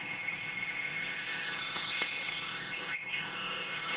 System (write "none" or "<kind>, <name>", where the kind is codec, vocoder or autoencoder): codec, ZipCodec